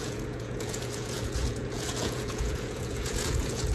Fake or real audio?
fake